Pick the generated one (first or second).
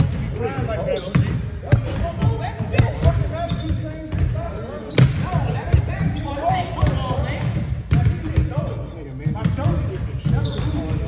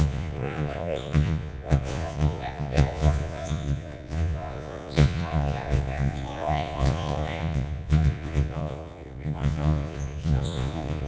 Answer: second